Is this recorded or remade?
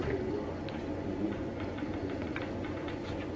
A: remade